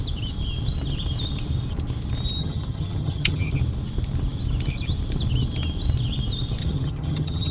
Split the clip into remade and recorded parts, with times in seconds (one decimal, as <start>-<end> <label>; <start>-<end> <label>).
0.0-2.4 recorded; 2.4-3.5 remade; 3.5-6.6 recorded; 6.6-7.5 remade